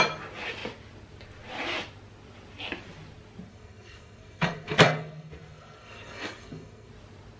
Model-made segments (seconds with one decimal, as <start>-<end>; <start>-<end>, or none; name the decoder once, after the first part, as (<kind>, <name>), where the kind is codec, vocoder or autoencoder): 3.5-6.9 (codec, SNAC)

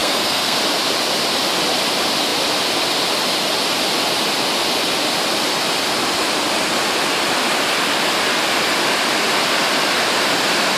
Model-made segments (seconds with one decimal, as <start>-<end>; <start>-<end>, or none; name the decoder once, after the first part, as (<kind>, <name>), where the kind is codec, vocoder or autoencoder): 0.0-0.6 (codec, SNAC)

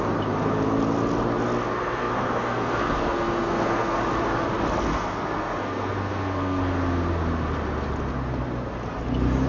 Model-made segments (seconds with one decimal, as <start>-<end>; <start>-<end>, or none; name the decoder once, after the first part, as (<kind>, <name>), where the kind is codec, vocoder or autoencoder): 1.7-4.0 (codec, SNAC); 4.9-6.6

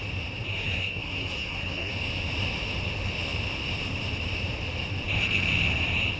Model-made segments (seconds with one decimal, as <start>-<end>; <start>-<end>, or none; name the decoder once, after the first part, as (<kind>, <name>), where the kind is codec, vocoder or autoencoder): 0.5-1.9 (codec, SNAC)

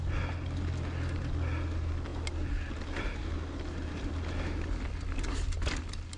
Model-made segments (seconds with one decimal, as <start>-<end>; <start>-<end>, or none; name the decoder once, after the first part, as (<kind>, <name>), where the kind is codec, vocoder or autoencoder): none

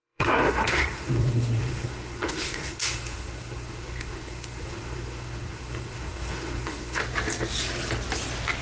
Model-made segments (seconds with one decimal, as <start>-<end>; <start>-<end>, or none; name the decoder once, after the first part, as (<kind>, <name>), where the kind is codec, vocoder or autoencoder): 0.0-7.0 (codec, SNAC)

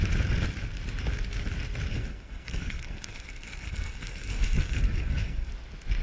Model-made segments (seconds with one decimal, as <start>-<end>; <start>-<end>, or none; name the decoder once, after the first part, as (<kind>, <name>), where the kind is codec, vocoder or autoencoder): 1.9-5.5 (codec, SNAC)